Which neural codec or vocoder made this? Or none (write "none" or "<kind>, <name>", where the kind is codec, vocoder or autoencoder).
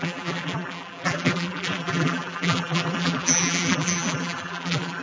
vocoder, BigVGAN v2